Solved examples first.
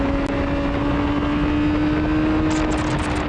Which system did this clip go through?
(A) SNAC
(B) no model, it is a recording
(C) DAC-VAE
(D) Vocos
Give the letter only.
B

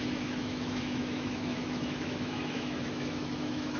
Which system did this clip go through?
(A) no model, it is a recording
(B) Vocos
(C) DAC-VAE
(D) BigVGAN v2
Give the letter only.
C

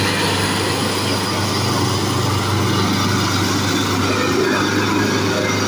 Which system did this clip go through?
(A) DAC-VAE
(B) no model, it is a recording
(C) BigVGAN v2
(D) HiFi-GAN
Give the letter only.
B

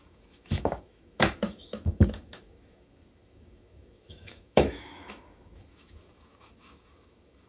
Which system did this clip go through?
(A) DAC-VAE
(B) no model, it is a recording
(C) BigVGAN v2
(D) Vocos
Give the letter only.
A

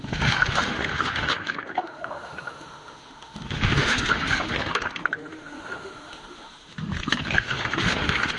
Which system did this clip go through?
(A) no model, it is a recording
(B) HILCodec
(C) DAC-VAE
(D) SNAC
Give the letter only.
C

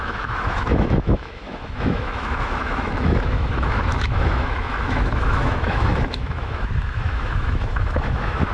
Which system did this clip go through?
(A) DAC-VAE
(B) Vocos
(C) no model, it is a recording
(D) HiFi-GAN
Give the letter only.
A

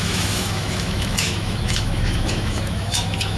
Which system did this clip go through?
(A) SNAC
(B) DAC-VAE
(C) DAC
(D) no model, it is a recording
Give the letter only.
B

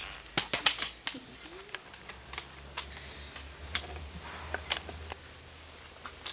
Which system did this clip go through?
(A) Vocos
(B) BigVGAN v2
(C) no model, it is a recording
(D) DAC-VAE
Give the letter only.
C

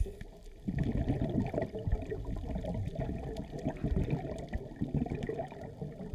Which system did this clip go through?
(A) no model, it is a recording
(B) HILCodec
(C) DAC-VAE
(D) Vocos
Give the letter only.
A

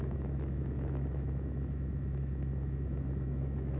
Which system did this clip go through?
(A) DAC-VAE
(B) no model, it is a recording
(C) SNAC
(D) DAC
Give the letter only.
A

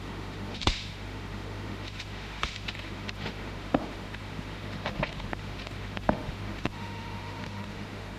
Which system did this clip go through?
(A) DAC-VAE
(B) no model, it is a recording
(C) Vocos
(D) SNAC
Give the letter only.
A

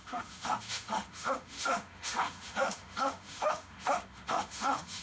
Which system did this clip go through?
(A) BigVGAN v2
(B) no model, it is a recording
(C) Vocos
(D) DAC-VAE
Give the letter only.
D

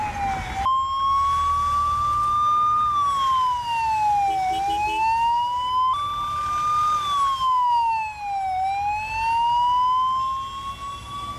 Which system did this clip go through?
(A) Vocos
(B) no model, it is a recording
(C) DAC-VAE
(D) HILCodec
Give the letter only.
B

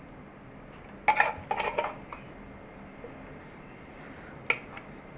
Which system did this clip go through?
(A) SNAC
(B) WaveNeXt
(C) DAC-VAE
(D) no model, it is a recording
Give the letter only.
D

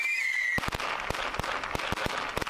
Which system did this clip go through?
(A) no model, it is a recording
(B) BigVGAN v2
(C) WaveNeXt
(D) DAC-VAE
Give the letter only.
A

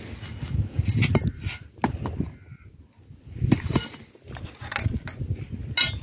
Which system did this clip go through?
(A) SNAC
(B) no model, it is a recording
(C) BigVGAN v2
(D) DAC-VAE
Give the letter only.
B